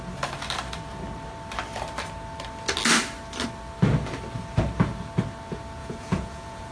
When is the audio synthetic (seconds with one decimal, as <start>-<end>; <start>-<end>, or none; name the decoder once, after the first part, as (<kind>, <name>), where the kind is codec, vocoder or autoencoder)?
5.8-6.7 (vocoder, Vocos)